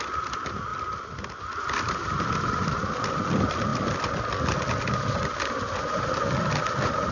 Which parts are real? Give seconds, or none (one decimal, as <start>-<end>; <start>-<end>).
0.0-7.1